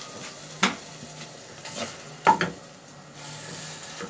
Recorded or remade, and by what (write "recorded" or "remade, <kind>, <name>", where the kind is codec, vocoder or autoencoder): recorded